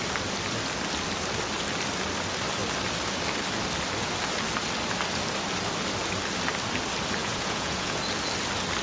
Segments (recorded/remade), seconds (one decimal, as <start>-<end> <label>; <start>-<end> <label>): 0.0-7.2 recorded; 7.2-8.0 remade; 8.0-8.8 recorded